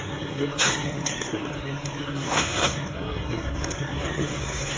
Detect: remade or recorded remade